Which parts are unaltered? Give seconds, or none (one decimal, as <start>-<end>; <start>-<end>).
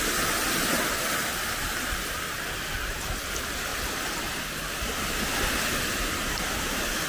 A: 0.0-7.1